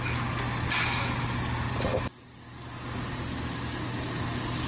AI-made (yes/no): no